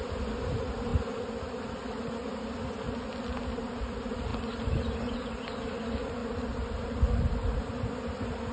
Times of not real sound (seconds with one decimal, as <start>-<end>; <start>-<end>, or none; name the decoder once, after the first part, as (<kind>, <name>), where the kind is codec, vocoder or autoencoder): 6.2-7.7 (vocoder, BigVGAN v2)